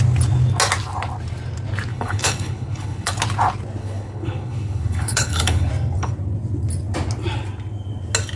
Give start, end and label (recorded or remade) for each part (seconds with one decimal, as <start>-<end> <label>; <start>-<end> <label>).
0.0-1.9 recorded; 1.9-3.1 remade; 3.1-3.8 recorded; 3.8-5.7 remade; 5.7-8.4 recorded